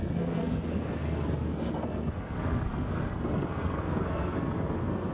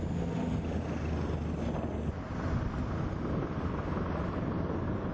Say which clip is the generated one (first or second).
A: first